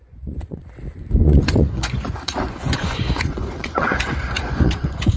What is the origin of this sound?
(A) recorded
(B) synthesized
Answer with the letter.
B